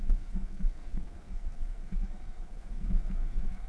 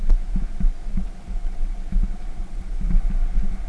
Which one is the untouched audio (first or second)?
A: second